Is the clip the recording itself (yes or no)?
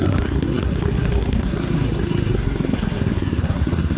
no